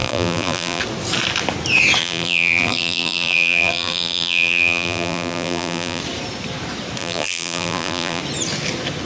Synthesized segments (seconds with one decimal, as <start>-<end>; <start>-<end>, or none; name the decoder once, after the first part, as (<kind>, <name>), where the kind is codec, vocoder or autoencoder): 0.0-0.8 (vocoder, BigVGAN v2); 2.0-6.0; 7.0-8.2